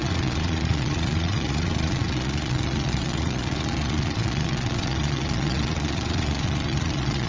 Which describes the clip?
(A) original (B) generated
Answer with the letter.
B